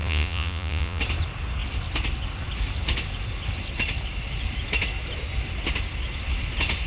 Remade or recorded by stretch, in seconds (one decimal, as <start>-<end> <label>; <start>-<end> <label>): 0.0-1.0 remade; 1.0-6.9 recorded